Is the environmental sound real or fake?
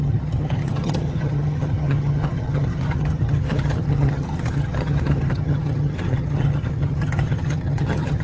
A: fake